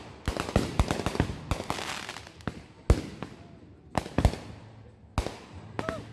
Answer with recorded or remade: recorded